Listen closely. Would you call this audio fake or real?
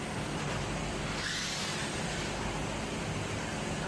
real